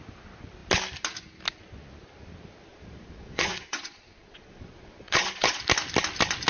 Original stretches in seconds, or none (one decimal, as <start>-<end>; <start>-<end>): 0.0-2.7; 5.6-6.5